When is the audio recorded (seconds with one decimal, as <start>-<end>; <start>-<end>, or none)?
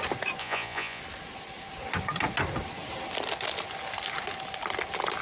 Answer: 0.0-0.4; 1.0-5.2